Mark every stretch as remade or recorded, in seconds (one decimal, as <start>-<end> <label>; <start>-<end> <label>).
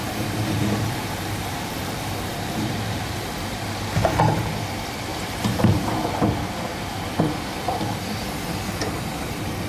0.0-3.9 remade; 3.9-5.1 recorded; 5.1-6.2 remade; 6.2-9.7 recorded